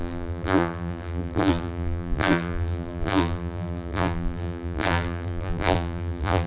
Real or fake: fake